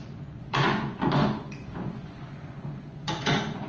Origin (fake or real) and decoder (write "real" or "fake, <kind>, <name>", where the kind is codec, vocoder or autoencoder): fake, vocoder, Vocos